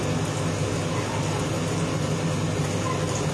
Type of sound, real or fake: real